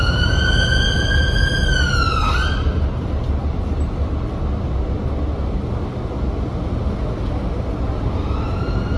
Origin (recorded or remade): recorded